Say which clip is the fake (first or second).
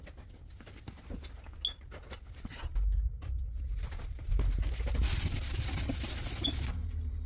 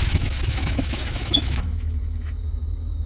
second